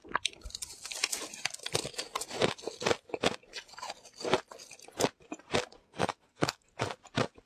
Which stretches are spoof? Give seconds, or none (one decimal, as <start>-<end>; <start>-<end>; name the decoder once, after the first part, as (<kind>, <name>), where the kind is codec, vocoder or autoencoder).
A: 5.8-6.7 (codec, SNAC)